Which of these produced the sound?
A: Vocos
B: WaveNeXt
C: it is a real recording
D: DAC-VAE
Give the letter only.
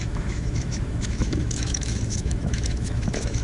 D